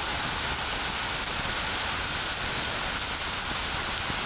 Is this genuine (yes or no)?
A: yes